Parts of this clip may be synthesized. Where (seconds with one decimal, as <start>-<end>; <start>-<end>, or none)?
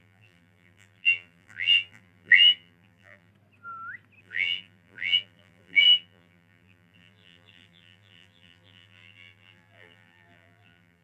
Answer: 0.0-3.3; 4.2-11.0